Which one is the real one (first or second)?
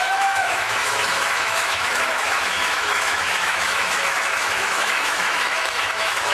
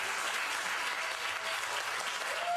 second